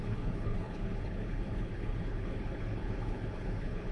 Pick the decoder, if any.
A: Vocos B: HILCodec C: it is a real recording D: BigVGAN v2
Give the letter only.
B